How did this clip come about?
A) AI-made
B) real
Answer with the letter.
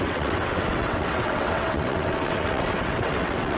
A